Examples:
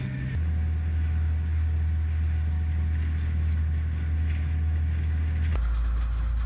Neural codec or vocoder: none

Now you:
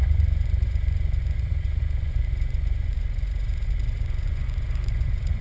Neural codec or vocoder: vocoder, Vocos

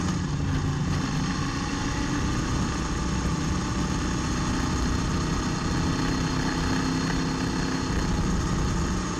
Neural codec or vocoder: none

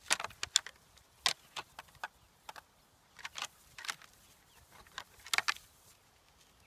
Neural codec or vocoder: none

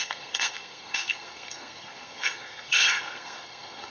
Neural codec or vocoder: codec, SNAC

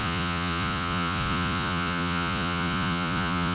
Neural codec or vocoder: vocoder, Vocos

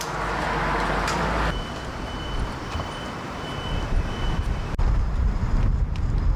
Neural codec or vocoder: none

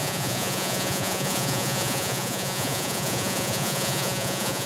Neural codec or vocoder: vocoder, Vocos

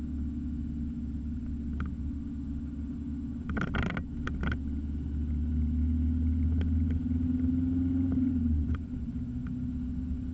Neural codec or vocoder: none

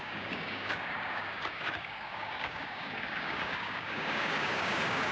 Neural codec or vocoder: codec, DAC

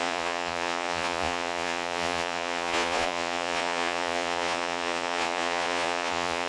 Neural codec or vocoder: vocoder, Vocos